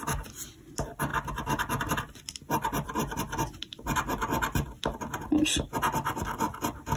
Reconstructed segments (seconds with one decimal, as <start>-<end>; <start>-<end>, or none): none